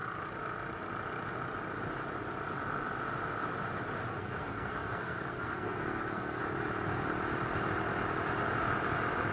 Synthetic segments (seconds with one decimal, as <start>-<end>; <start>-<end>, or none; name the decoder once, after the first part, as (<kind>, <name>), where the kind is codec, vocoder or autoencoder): 4.1-6.4 (codec, SNAC)